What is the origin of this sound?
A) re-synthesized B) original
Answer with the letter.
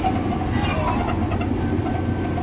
B